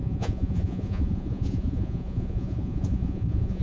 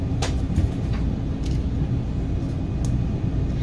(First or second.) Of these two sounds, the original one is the second